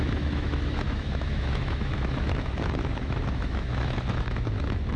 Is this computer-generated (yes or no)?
yes